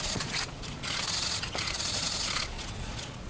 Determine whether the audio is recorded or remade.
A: remade